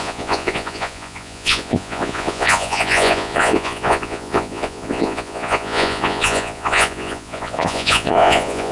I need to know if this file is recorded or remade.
remade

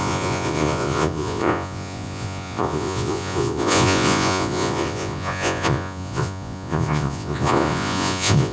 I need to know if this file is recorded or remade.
remade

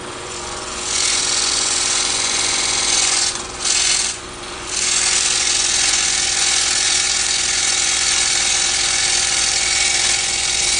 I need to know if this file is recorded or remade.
remade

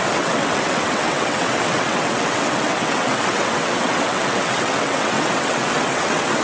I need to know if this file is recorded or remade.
remade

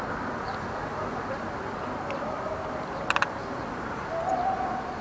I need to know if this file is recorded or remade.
recorded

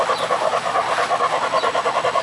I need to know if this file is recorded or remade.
recorded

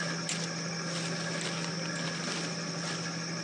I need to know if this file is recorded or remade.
recorded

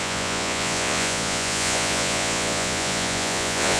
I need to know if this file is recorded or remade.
remade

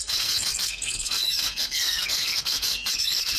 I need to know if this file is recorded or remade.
remade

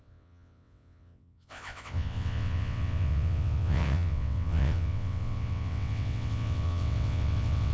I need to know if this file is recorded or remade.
remade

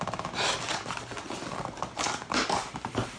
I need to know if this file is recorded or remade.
recorded